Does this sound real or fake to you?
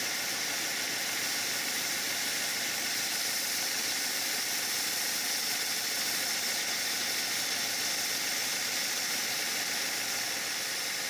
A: real